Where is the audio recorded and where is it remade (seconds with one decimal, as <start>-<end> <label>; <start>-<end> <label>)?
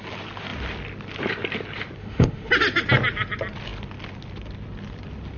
0.0-2.0 recorded; 2.0-2.5 remade; 2.5-5.4 recorded